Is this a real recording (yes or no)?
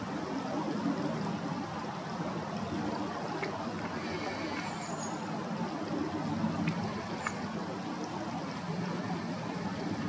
yes